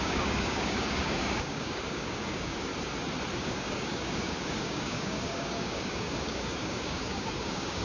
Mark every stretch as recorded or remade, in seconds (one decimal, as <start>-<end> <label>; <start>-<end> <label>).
0.0-2.7 remade; 2.7-3.4 recorded; 3.4-7.8 remade